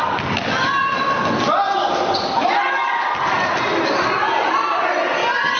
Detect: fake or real real